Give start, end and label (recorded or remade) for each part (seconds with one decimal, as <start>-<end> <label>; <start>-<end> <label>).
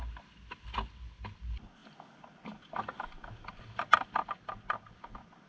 0.0-5.5 recorded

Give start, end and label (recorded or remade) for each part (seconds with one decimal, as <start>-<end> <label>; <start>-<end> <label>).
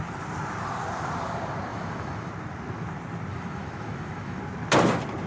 0.0-1.7 recorded; 1.7-2.3 remade; 2.3-3.3 recorded; 3.3-4.4 remade; 4.4-5.3 recorded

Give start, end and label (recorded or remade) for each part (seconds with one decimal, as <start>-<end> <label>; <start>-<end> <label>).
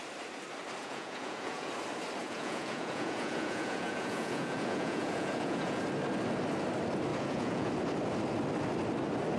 0.0-0.8 recorded; 0.8-1.7 remade; 1.7-2.2 recorded; 2.2-5.8 remade; 5.8-7.1 recorded; 7.1-7.7 remade; 7.7-9.4 recorded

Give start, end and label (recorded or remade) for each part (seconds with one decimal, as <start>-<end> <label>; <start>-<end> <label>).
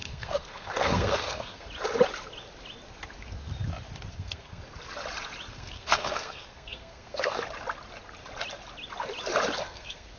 0.0-1.7 remade; 1.7-4.1 recorded; 4.1-4.6 remade; 4.6-5.5 recorded; 5.5-7.4 remade; 7.4-9.6 recorded; 9.6-10.2 remade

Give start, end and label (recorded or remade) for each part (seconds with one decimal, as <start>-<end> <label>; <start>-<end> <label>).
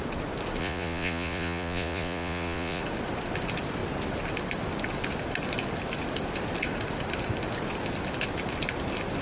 0.0-0.6 recorded; 0.6-2.8 remade; 2.8-9.2 recorded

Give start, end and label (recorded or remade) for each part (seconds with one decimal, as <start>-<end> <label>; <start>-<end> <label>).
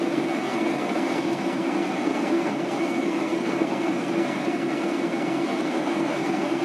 0.0-6.6 remade